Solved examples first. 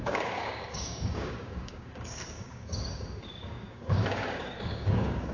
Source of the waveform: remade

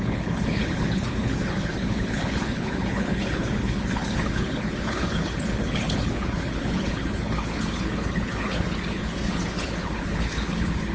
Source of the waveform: remade